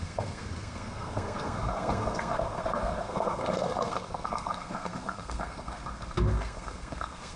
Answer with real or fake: fake